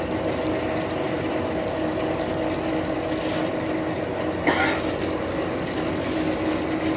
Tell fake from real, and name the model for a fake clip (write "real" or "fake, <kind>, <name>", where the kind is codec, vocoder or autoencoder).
real